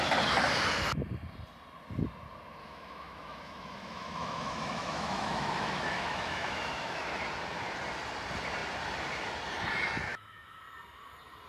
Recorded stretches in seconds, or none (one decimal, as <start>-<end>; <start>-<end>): 0.0-2.6; 7.2-10.1; 10.6-11.5